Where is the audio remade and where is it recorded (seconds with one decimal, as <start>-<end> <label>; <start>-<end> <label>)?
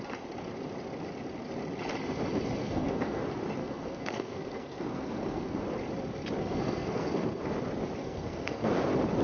0.0-2.6 recorded; 2.6-3.2 remade; 3.2-3.6 recorded; 3.6-5.6 remade; 5.6-6.4 recorded; 6.4-7.4 remade; 7.4-8.0 recorded; 8.0-8.7 remade; 8.7-9.2 recorded